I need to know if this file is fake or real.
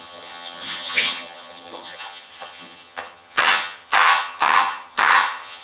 fake